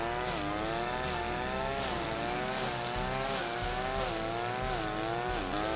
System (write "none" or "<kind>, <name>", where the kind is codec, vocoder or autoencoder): none